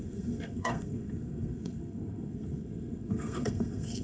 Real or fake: fake